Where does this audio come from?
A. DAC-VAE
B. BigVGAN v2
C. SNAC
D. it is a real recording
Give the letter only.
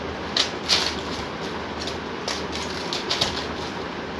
D